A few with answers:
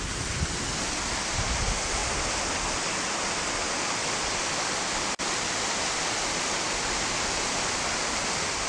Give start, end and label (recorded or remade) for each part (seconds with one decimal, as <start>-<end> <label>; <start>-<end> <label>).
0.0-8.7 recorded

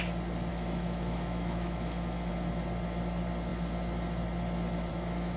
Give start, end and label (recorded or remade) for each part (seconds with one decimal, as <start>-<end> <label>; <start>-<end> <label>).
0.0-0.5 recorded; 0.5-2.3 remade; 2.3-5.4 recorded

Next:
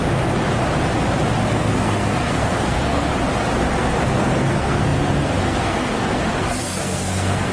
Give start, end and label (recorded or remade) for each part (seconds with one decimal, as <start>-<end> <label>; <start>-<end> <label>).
0.0-1.5 recorded; 1.5-3.1 remade; 3.1-3.7 recorded; 3.7-7.5 remade

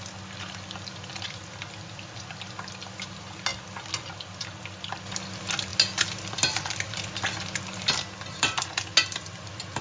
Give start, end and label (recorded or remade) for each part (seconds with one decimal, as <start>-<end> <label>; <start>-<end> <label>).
0.0-9.8 recorded

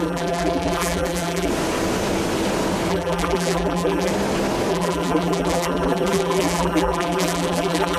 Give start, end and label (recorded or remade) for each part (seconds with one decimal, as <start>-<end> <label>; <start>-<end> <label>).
0.0-1.5 remade; 1.5-2.9 recorded; 2.9-4.1 remade; 4.1-4.7 recorded; 4.7-8.0 remade

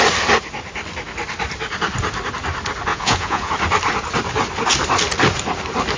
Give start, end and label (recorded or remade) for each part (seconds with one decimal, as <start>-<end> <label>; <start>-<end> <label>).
0.0-2.9 recorded; 2.9-3.5 remade; 3.5-6.0 recorded